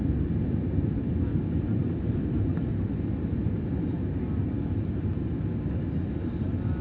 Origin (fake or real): real